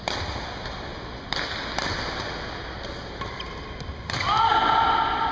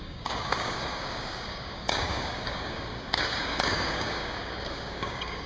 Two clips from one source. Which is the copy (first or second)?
second